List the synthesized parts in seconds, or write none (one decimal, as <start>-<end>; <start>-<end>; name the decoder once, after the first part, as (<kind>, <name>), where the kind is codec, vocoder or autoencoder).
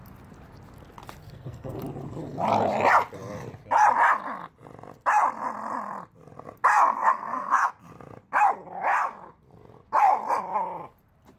1.2-1.8 (codec, SNAC); 6.7-7.7